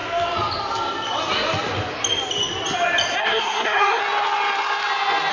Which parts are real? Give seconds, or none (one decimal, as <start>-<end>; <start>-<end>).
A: 0.0-3.2; 4.0-5.3